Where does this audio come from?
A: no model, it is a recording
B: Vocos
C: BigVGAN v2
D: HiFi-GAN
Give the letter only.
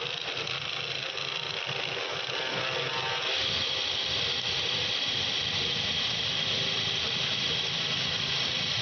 A